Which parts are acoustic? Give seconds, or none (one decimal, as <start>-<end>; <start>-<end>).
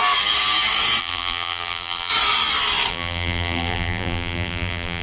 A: 0.0-1.0; 2.1-2.9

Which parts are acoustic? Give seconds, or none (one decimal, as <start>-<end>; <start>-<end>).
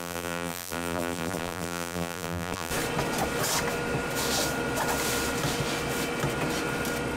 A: 2.7-7.2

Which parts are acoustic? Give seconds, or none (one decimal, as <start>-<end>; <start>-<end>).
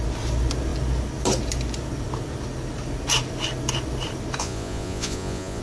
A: 0.0-4.4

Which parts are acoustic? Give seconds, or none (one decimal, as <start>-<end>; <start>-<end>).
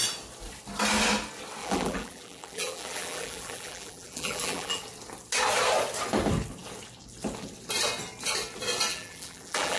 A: 0.0-1.6; 4.8-8.9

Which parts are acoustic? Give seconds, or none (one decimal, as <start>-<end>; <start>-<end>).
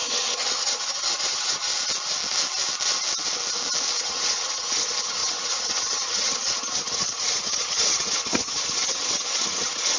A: 1.7-4.0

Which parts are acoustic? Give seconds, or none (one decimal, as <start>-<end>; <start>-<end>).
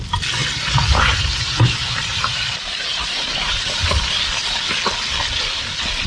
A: 0.0-0.4; 4.1-6.1